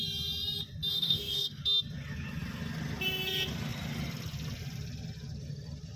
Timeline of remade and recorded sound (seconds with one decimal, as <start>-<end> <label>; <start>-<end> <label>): 0.0-0.9 recorded; 0.9-1.6 remade; 1.6-6.0 recorded